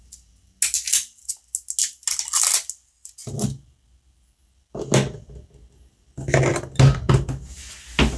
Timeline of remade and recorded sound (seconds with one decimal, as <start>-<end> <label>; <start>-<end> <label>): 0.0-8.2 recorded